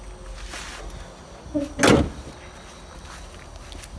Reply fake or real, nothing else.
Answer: real